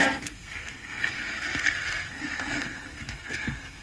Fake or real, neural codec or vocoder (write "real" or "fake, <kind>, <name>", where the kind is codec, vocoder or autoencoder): fake, codec, SNAC